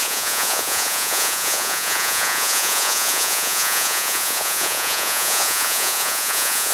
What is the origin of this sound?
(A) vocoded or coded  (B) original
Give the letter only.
A